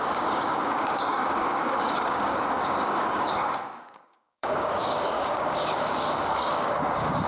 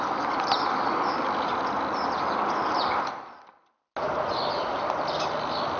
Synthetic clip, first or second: first